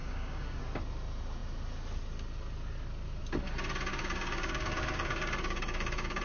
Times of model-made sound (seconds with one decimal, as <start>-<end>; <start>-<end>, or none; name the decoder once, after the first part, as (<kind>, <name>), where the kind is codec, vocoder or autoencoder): 0.0-0.6 (codec, DAC); 3.9-6.2